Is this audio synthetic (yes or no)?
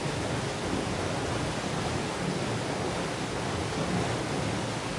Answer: no